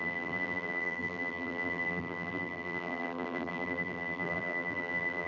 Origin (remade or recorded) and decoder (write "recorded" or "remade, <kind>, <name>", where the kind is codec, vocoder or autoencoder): remade, vocoder, BigVGAN v2